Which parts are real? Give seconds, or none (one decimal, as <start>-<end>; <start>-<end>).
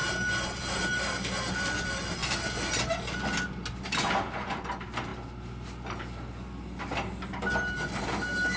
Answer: 0.0-8.6